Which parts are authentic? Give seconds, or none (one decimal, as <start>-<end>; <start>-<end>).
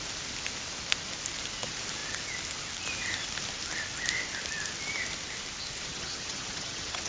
0.0-5.9